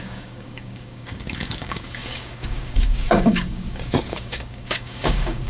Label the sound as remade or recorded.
remade